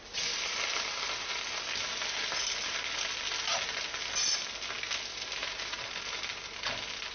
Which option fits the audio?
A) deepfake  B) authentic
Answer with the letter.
B